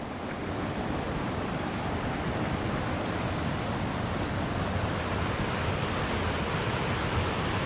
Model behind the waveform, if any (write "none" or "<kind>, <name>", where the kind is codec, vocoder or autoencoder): none